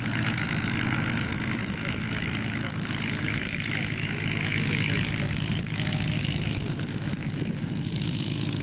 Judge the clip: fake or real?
fake